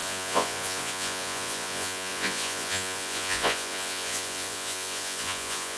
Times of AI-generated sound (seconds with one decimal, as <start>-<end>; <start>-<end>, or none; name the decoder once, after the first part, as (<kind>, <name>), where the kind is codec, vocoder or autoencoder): 0.0-5.8 (vocoder, Vocos)